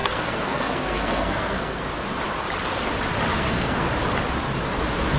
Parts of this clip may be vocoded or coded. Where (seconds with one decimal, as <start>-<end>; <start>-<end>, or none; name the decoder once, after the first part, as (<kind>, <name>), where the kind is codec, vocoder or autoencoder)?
0.0-1.8 (codec, SNAC); 3.3-3.9